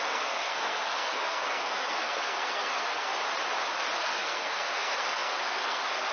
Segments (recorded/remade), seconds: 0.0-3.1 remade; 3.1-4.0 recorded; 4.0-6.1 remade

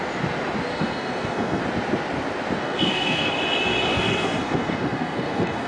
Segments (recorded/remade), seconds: 0.0-0.7 recorded; 0.7-1.6 remade; 1.6-2.6 recorded; 2.6-3.3 remade; 3.3-3.9 recorded; 3.9-5.7 remade

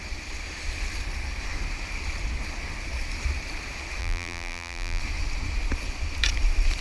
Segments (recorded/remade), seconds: 0.0-4.0 recorded; 4.0-5.0 remade; 5.0-6.8 recorded